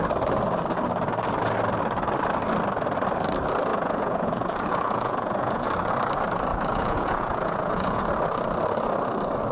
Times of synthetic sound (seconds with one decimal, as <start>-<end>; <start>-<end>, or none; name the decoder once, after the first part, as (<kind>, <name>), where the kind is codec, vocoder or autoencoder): 3.7-5.7 (vocoder, Vocos); 6.5-8.0